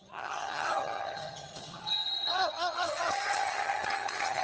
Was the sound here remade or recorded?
remade